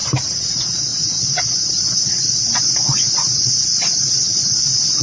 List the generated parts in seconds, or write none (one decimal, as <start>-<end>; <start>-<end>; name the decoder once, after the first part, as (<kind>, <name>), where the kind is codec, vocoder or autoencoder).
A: 0.5-5.0 (vocoder, Vocos)